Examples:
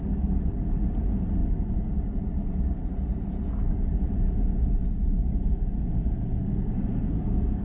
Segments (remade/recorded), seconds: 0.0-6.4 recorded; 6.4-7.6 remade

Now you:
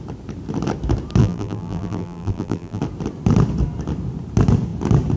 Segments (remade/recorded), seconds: 0.0-1.2 recorded; 1.2-2.8 remade; 2.8-5.2 recorded

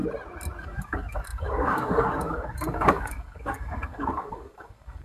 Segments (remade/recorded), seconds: 0.0-0.6 recorded; 0.6-5.0 remade

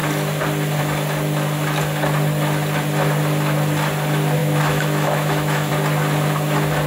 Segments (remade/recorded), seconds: 0.0-4.4 recorded; 4.4-5.7 remade; 5.7-6.9 recorded

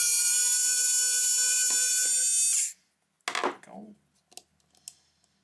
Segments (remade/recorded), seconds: 0.0-5.4 recorded

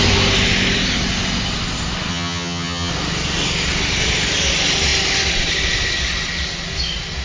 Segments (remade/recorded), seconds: 0.0-2.1 recorded; 2.1-2.9 remade; 2.9-7.2 recorded

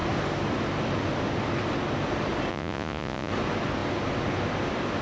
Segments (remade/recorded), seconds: 0.0-2.5 recorded; 2.5-3.3 remade; 3.3-5.0 recorded

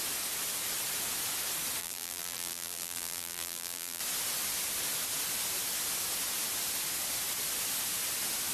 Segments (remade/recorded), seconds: 0.0-1.8 recorded; 1.8-4.0 remade; 4.0-8.5 recorded